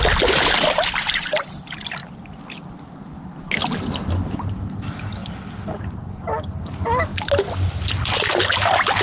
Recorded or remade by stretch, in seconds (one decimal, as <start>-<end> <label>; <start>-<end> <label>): 0.0-7.1 recorded; 7.1-8.3 remade; 8.3-9.0 recorded